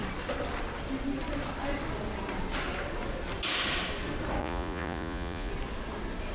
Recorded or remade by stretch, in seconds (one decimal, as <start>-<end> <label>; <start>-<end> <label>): 0.0-4.4 recorded; 4.4-5.5 remade; 5.5-6.3 recorded